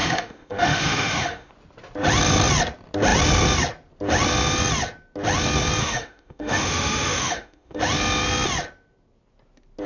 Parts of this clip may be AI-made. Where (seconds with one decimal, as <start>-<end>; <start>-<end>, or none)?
0.0-1.5; 5.8-7.8